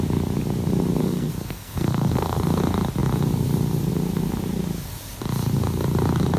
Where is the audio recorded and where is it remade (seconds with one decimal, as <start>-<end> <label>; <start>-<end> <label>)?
0.0-1.0 recorded; 1.0-2.6 remade; 2.6-6.4 recorded